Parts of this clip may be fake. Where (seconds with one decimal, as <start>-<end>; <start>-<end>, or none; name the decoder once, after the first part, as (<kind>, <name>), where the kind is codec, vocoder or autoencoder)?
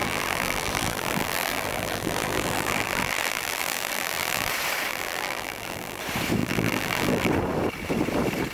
0.0-4.5 (vocoder, BigVGAN v2); 4.9-6.0; 6.4-7.3